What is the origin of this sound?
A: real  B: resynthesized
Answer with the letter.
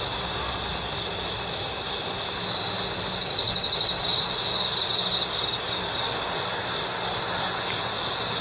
A